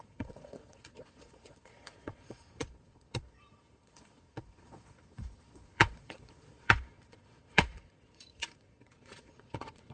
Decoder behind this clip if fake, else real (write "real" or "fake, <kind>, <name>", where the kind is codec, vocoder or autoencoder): fake, vocoder, Vocos